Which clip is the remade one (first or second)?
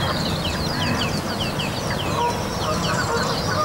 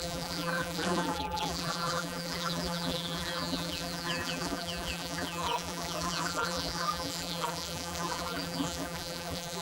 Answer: second